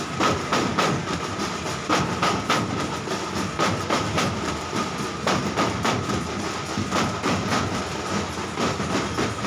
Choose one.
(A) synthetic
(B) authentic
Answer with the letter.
B